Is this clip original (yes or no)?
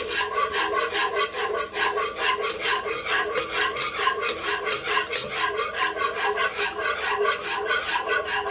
yes